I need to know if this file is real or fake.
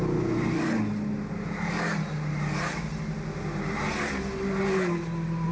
real